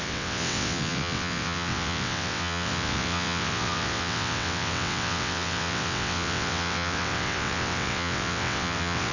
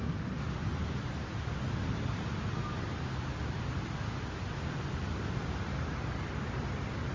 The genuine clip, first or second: second